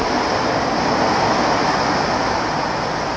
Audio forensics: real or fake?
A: real